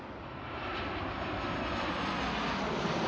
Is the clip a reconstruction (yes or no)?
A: no